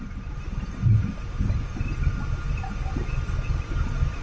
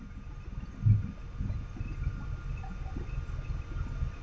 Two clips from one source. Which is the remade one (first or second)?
first